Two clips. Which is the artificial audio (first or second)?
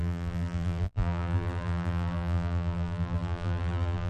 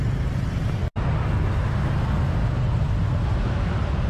first